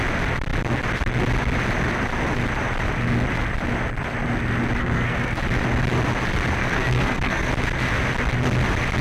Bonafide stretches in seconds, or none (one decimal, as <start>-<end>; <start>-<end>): 0.0-4.8; 5.4-6.6; 7.5-9.0